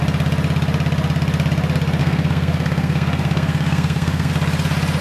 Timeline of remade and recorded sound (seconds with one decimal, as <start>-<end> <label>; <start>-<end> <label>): 0.0-2.0 recorded; 2.0-4.3 remade; 4.3-5.0 recorded